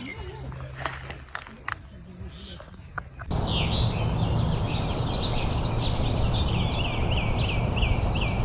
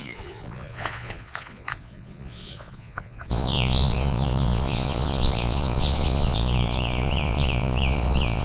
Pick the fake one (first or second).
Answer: second